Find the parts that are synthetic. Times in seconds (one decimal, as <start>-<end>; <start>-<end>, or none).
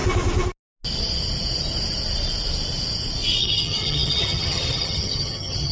3.4-5.7